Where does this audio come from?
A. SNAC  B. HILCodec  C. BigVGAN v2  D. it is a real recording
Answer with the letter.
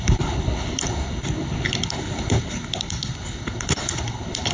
B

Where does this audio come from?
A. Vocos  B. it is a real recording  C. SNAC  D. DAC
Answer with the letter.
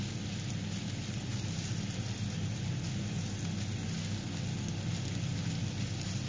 B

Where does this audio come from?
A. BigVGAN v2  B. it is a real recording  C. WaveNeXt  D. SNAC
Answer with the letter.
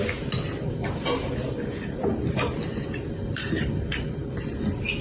B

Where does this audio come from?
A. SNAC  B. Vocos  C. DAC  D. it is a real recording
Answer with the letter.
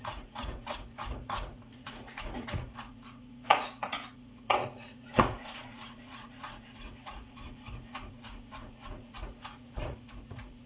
B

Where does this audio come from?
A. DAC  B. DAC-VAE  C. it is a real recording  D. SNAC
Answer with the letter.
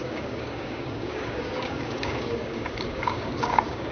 A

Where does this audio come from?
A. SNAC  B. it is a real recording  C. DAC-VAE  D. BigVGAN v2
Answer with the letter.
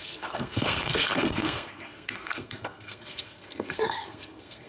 A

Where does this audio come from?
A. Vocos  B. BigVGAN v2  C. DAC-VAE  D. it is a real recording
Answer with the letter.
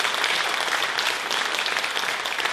D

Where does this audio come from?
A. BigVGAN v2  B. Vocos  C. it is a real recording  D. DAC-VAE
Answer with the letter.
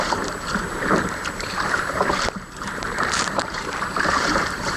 A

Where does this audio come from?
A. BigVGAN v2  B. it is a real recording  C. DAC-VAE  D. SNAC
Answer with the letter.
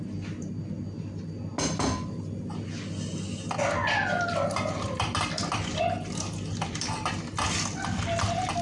B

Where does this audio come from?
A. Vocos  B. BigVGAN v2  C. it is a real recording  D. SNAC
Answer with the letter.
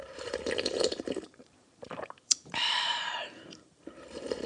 B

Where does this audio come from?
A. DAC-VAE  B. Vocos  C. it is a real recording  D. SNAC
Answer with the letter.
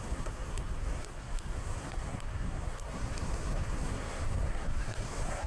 D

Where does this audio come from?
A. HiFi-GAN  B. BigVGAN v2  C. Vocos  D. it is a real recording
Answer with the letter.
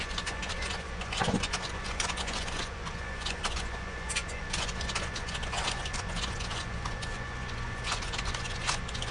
C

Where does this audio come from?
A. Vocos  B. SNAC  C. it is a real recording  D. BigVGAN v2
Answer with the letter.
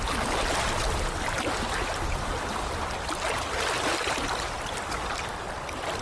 C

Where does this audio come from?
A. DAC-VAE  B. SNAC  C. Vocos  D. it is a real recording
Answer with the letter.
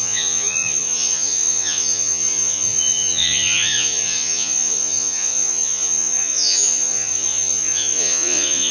C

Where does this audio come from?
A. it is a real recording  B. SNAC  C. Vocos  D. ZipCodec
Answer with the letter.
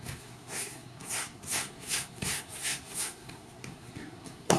B